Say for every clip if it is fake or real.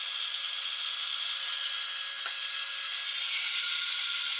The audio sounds real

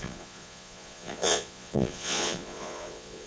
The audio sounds fake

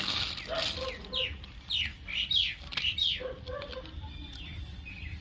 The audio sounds real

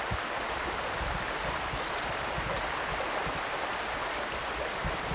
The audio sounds real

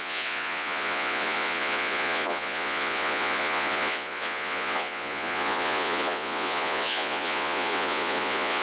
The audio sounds fake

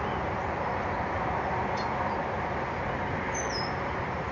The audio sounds real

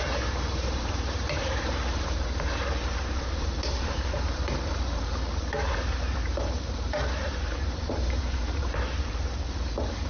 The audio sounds fake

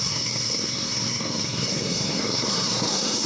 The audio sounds fake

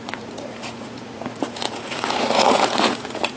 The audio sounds fake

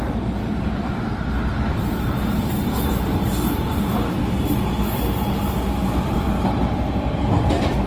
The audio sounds real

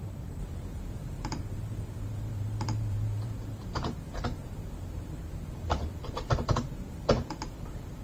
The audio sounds fake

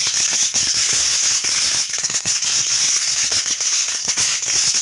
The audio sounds fake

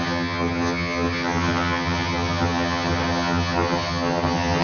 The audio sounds fake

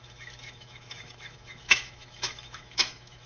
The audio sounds fake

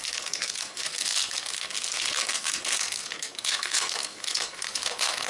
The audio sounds fake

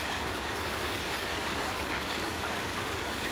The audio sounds fake